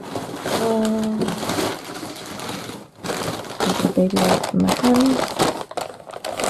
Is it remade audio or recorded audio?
recorded